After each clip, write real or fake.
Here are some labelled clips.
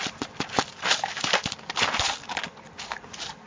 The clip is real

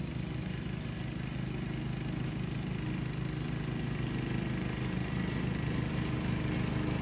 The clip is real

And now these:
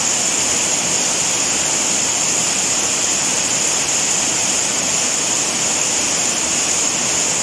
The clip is real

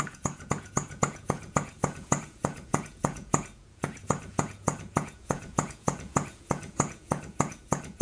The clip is fake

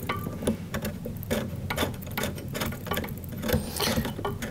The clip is real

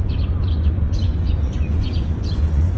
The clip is fake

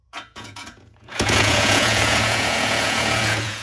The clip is fake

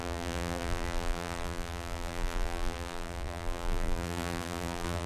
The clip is fake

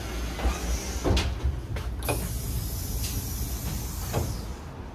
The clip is real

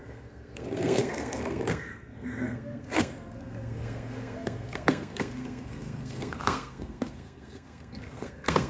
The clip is fake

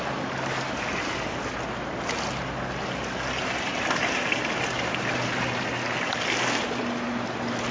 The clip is real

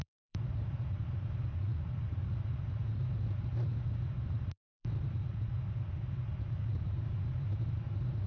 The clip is fake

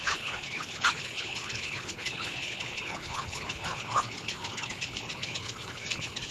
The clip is fake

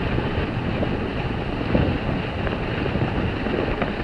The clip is real